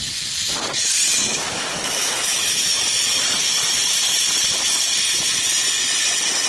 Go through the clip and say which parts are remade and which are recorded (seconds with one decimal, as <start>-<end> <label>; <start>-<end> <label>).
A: 0.0-1.3 recorded; 1.3-2.8 remade; 2.8-6.5 recorded